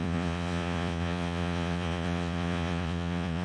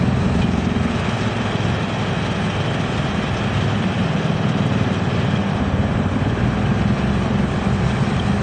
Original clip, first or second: second